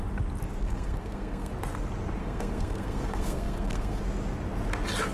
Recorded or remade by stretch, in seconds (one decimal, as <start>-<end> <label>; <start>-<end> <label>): 0.0-0.6 recorded; 0.6-1.5 remade; 1.5-2.2 recorded; 2.2-4.0 remade; 4.0-5.1 recorded